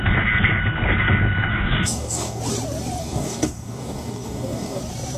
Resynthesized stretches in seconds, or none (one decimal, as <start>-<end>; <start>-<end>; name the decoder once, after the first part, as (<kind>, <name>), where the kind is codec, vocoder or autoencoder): 1.5-2.4 (codec, DAC); 3.0-4.8